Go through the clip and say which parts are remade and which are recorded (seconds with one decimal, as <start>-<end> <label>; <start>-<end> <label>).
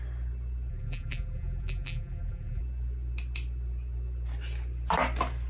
0.0-0.7 recorded; 0.7-2.6 remade; 2.6-5.5 recorded